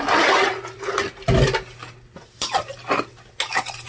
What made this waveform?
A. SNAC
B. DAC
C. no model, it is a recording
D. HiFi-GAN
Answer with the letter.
C